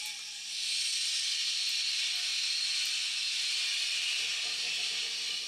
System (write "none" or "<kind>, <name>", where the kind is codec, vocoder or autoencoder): none